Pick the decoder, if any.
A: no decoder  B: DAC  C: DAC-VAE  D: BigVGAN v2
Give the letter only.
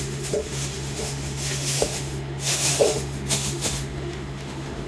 C